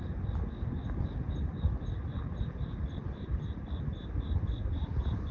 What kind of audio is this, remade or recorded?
recorded